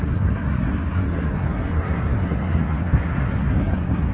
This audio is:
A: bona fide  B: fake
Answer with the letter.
B